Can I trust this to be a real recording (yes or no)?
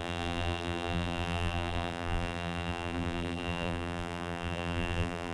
no